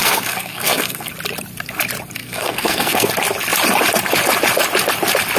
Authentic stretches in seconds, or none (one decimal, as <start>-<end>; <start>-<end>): 1.1-2.2; 3.1-5.4